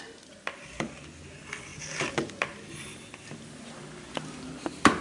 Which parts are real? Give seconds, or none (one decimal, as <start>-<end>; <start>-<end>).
0.0-5.0